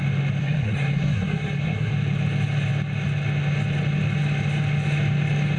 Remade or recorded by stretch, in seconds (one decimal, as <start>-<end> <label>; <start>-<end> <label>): 0.0-0.4 recorded; 0.4-1.9 remade; 1.9-5.6 recorded